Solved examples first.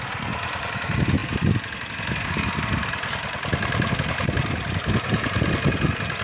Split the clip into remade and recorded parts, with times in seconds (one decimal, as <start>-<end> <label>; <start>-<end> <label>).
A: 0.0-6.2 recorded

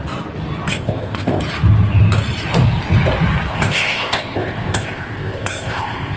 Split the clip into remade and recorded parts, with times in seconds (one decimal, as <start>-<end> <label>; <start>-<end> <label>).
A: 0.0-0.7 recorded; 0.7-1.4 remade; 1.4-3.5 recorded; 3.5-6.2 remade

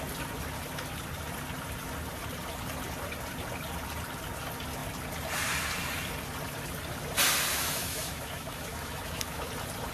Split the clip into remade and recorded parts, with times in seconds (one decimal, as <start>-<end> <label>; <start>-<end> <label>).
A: 0.0-7.5 recorded; 7.5-9.5 remade; 9.5-9.9 recorded

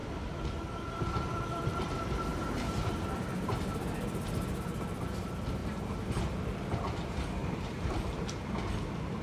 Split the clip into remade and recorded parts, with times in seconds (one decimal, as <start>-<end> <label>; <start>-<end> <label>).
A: 0.0-2.3 recorded; 2.3-3.6 remade; 3.6-5.6 recorded; 5.6-6.2 remade; 6.2-7.4 recorded; 7.4-8.4 remade; 8.4-9.2 recorded

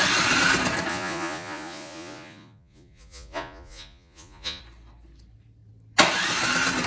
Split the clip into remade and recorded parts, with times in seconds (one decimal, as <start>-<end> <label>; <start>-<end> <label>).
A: 0.0-0.9 recorded; 0.9-4.6 remade; 4.6-6.9 recorded

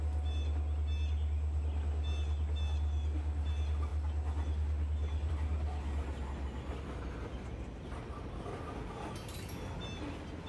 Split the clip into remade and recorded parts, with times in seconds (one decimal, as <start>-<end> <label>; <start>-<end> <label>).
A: 0.0-10.5 recorded

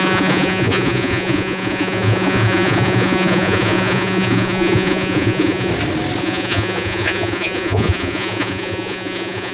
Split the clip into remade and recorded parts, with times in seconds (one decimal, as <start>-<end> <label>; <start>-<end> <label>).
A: 0.0-5.7 remade; 5.7-6.2 recorded; 6.2-9.5 remade

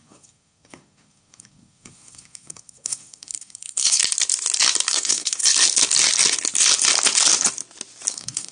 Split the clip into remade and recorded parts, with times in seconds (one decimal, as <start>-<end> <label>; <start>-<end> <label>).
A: 0.0-4.0 remade; 4.0-4.9 recorded; 4.9-5.4 remade; 5.4-8.1 recorded; 8.1-8.5 remade